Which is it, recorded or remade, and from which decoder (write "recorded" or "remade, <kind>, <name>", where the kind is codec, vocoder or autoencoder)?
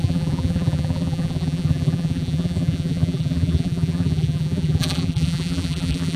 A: remade, vocoder, BigVGAN v2